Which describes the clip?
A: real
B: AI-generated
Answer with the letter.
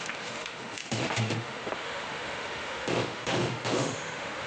B